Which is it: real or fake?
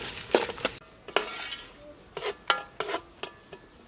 real